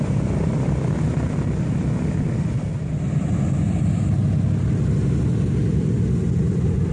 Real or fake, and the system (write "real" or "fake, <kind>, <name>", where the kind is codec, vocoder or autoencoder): real